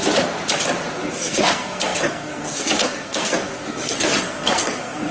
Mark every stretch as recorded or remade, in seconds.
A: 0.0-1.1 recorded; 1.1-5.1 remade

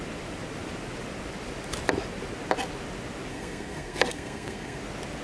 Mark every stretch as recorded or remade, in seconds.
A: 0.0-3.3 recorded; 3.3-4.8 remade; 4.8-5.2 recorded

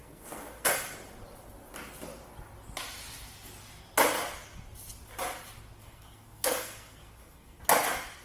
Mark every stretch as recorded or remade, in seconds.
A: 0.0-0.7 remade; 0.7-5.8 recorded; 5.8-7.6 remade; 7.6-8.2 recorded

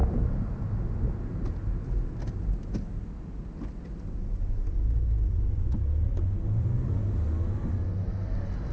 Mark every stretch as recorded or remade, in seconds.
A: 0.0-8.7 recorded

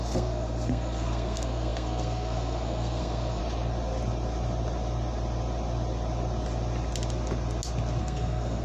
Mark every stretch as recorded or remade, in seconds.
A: 0.0-3.4 remade; 3.4-8.0 recorded; 8.0-8.6 remade

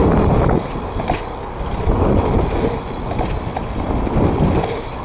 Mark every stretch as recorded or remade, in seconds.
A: 0.0-5.0 recorded

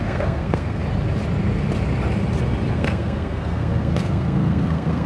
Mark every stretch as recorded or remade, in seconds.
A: 0.0-0.8 remade; 0.8-2.7 recorded; 2.7-5.1 remade

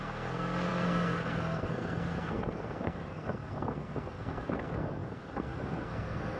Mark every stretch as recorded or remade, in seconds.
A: 0.0-6.4 remade